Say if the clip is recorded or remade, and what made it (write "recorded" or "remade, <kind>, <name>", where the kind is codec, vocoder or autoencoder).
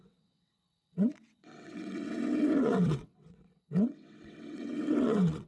remade, vocoder, WaveNeXt